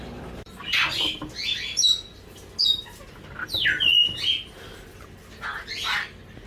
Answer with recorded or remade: recorded